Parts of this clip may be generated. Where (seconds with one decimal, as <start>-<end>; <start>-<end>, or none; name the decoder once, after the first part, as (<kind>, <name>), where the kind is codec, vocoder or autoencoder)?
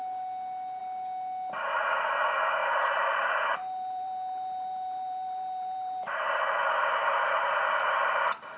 2.6-7.5 (vocoder, BigVGAN v2)